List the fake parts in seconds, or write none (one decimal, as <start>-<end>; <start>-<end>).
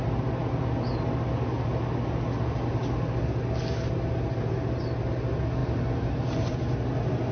none